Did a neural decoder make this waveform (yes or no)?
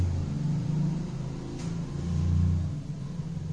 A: no